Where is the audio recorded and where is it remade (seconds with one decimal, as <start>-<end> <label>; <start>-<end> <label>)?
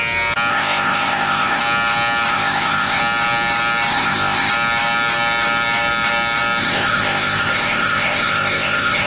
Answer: 0.0-0.5 recorded; 0.5-1.6 remade; 1.6-2.3 recorded; 2.3-3.0 remade; 3.0-3.9 recorded; 3.9-4.5 remade; 4.5-6.6 recorded; 6.6-9.1 remade